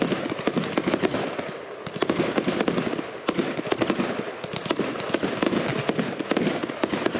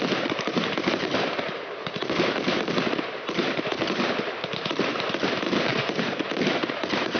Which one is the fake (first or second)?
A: second